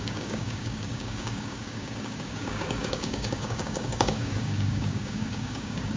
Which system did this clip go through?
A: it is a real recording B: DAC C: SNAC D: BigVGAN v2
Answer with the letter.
B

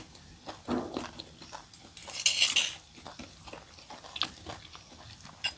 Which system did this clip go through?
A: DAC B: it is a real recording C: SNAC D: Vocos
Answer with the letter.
B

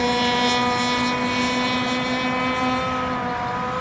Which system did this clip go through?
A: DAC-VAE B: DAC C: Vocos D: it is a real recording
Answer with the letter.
D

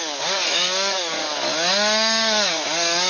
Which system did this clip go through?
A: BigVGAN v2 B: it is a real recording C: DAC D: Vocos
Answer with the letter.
C